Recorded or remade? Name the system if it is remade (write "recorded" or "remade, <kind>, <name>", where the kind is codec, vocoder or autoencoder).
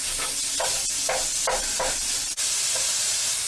recorded